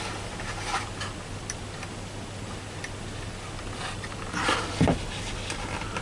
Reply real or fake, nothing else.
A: real